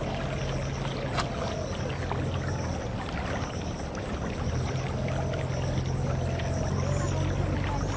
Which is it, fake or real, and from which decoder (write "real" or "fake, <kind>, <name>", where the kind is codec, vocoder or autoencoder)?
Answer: real